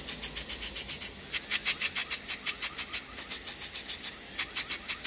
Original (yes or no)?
yes